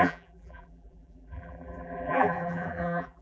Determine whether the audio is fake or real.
fake